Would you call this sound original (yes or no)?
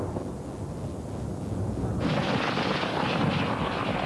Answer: yes